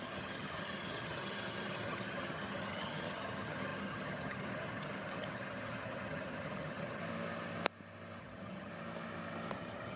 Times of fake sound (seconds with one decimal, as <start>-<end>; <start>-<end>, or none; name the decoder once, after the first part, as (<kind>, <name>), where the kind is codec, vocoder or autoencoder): 0.0-7.0 (vocoder, HiFi-GAN); 8.2-8.7; 9.5-10.0